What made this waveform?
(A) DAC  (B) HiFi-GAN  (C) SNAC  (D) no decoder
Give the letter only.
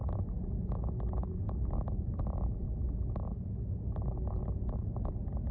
D